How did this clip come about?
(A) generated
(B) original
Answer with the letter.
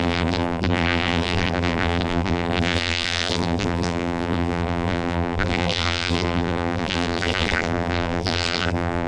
A